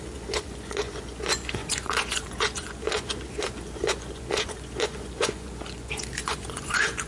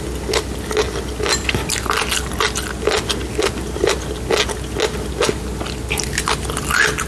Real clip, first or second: second